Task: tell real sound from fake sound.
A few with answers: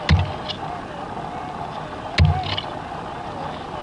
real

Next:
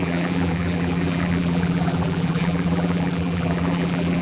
fake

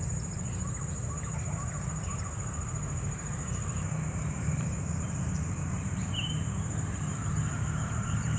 fake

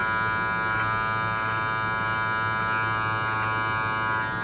real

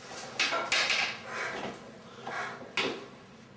real